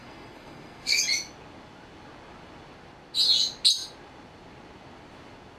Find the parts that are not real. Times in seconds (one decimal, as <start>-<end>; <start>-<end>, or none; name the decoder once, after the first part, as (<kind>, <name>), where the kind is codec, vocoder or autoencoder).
0.0-1.0 (codec, SNAC)